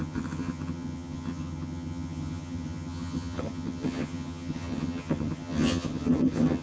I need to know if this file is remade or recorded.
remade